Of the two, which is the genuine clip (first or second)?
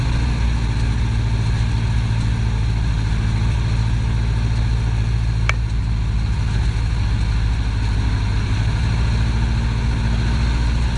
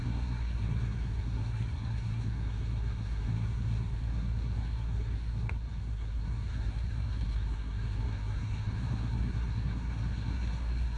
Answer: first